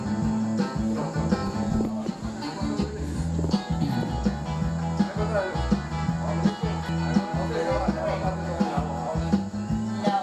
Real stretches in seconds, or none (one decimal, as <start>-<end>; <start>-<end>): 0.0-10.2